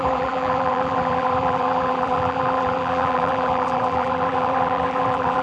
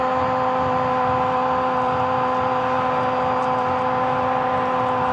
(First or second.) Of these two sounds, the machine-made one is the first